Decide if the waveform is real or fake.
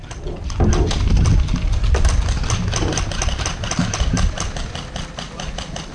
real